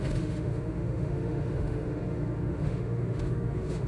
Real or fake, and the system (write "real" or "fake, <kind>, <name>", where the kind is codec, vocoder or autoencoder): fake, autoencoder, DAC-VAE